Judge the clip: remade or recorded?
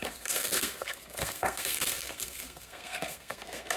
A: remade